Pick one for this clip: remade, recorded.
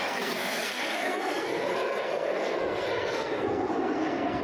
remade